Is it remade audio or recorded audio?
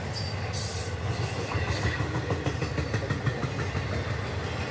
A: recorded